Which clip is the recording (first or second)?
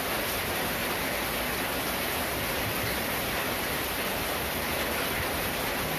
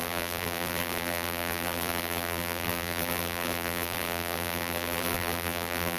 first